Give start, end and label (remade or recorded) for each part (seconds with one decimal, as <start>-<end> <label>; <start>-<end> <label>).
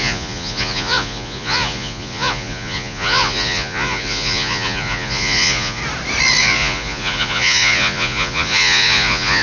0.0-5.8 remade; 5.8-6.4 recorded; 6.4-9.4 remade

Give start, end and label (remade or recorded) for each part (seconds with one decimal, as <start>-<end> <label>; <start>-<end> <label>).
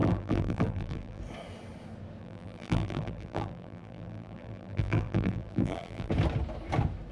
0.0-1.2 remade; 1.2-2.2 recorded; 2.2-6.1 remade; 6.1-7.1 recorded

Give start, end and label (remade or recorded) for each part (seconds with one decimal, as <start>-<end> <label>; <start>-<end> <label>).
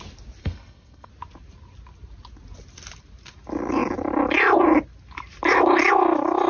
0.0-0.4 recorded; 0.4-1.1 remade; 1.1-6.5 recorded